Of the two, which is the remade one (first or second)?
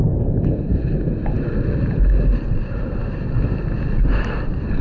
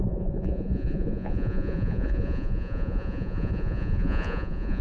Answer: second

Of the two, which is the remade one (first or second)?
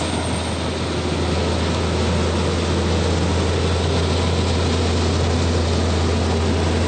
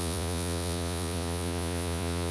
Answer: second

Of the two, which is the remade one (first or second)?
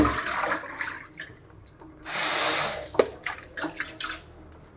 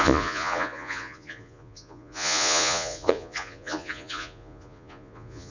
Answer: second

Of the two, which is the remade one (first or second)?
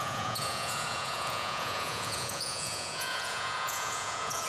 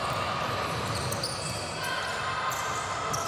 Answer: first